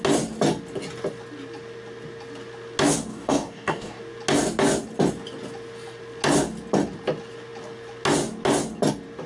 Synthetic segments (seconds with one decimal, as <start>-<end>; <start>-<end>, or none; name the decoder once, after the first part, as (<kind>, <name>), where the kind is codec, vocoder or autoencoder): 3.1-4.0 (codec, DAC)